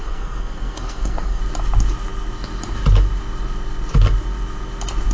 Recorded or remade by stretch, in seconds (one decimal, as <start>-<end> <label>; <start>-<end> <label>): 0.0-1.4 remade; 1.4-5.1 recorded